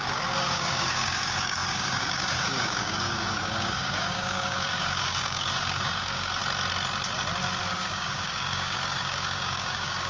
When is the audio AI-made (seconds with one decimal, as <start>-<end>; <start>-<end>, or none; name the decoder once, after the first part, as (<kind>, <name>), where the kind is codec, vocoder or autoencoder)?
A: 0.0-6.4 (codec, DAC); 7.7-10.1